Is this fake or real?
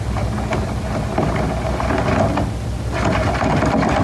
real